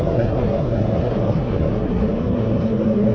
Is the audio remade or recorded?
remade